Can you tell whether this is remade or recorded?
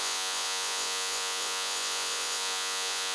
remade